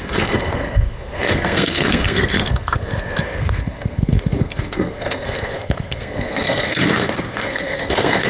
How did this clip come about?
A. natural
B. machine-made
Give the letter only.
B